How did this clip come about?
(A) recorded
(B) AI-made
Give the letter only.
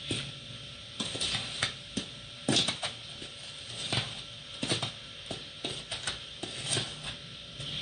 A